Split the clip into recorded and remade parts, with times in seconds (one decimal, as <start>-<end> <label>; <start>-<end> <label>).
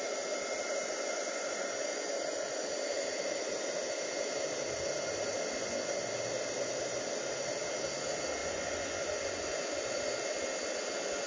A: 0.0-0.8 recorded; 0.8-2.6 remade; 2.6-5.6 recorded; 5.6-6.1 remade; 6.1-8.4 recorded; 8.4-10.0 remade; 10.0-11.3 recorded